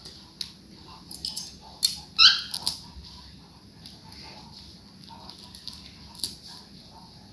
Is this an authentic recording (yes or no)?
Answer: yes